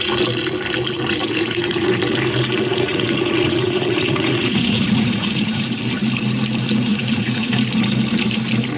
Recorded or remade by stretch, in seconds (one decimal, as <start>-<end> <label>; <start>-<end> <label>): 0.0-1.2 recorded; 1.2-1.9 remade; 1.9-2.7 recorded; 2.7-5.8 remade; 5.8-6.9 recorded; 6.9-7.5 remade; 7.5-8.8 recorded